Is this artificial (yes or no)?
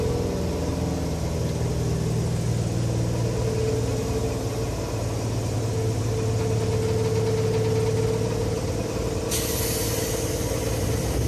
no